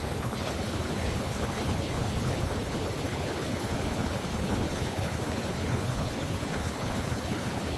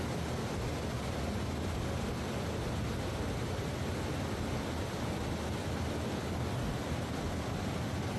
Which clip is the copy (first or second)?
first